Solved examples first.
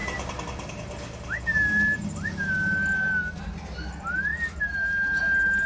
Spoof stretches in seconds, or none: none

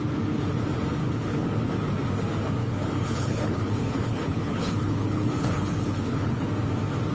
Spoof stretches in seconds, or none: 1.0-1.9 (codec, HILCodec); 2.6-6.5

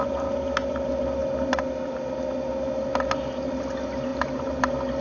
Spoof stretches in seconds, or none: 4.1-4.6 (vocoder, BigVGAN v2)

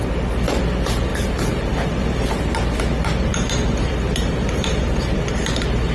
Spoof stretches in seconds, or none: 1.1-2.4 (vocoder, BigVGAN v2); 3.3-5.2

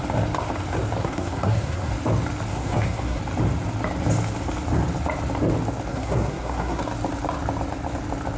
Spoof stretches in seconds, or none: 1.0-1.9 (codec, SNAC); 2.5-3.2; 5.9-6.8

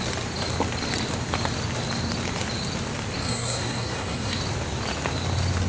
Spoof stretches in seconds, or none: 3.2-4.4 (codec, SNAC)

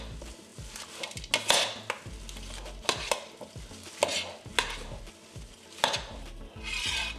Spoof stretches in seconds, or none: none

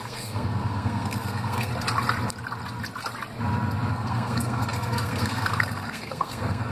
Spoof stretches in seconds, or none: 0.0-1.7 (codec, SNAC); 3.9-6.7